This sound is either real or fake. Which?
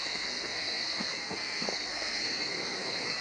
fake